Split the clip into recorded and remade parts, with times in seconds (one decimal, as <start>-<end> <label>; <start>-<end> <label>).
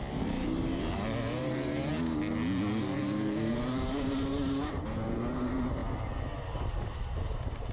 0.0-1.9 remade; 1.9-2.8 recorded; 2.8-5.8 remade; 5.8-6.4 recorded; 6.4-7.7 remade